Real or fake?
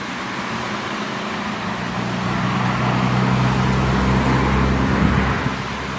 real